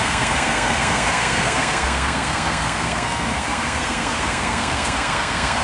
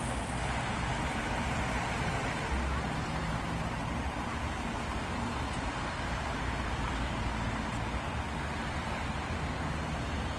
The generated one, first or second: first